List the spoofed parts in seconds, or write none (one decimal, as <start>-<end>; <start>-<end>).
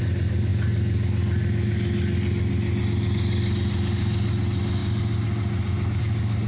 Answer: none